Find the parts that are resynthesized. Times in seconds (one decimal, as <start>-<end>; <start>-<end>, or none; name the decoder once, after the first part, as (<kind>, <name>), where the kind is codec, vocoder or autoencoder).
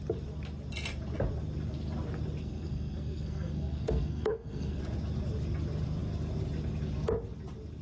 2.4-4.8 (codec, SNAC)